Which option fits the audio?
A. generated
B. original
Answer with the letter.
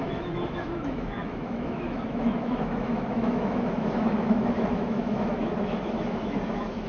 A